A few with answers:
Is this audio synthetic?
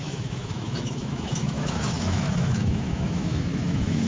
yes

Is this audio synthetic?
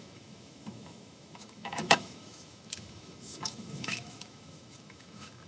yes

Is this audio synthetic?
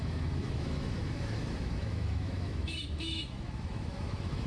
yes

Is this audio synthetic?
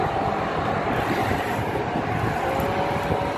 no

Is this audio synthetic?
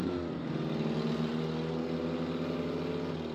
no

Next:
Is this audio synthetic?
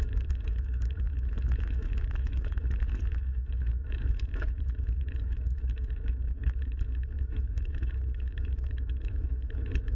yes